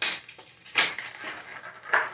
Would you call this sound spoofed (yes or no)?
no